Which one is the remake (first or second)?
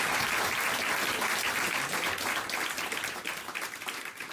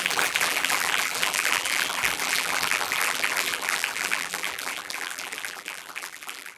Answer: second